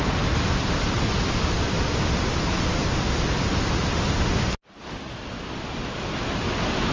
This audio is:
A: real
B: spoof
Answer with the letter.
A